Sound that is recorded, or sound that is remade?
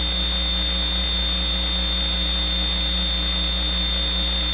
recorded